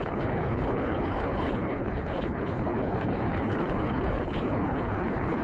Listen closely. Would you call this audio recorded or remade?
remade